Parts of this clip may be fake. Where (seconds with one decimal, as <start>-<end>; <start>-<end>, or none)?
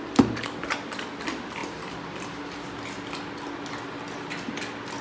none